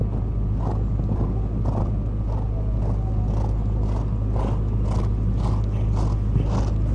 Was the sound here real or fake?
real